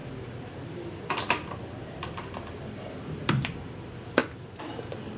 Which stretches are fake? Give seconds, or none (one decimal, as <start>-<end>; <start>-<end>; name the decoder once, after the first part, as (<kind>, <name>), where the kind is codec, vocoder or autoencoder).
0.5-5.2 (vocoder, BigVGAN v2)

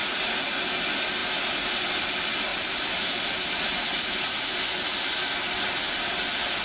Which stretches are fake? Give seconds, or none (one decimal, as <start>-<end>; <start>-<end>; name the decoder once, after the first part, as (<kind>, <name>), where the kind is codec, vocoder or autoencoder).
0.0-0.7 (vocoder, BigVGAN v2); 2.5-4.5

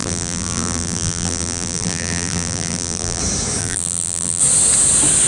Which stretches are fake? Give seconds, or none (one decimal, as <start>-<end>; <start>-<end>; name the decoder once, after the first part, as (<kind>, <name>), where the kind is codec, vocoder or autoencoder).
0.0-3.2 (vocoder, BigVGAN v2); 3.6-4.4